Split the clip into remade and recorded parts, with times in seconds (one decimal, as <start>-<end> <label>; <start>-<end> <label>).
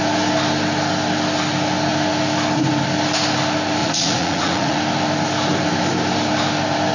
0.0-3.8 recorded; 3.8-4.8 remade; 4.8-6.9 recorded